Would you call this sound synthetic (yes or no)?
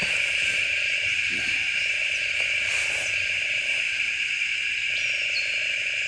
yes